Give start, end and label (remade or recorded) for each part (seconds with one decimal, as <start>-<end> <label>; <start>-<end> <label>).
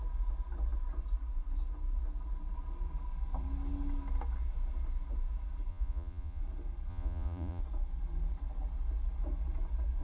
0.0-5.7 recorded; 5.7-6.4 remade; 6.4-6.9 recorded; 6.9-7.6 remade; 7.6-10.0 recorded